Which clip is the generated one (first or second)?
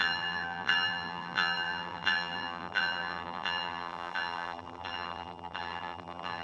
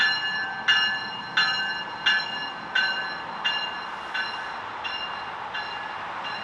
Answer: first